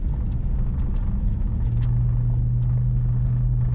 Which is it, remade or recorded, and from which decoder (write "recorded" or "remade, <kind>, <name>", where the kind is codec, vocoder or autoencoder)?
recorded